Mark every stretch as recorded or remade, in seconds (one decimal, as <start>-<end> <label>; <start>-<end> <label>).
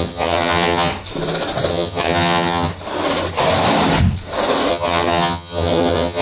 0.0-0.9 remade; 0.9-1.7 recorded; 1.7-2.7 remade; 2.7-4.7 recorded; 4.7-6.2 remade